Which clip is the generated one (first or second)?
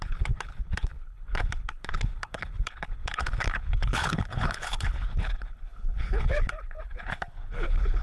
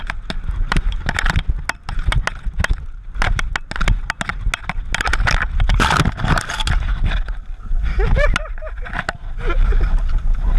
first